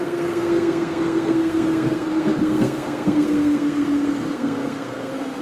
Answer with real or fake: fake